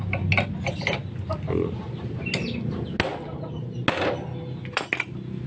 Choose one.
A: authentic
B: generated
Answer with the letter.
A